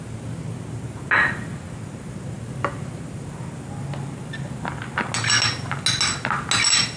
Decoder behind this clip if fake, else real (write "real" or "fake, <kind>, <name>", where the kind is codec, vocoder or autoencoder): real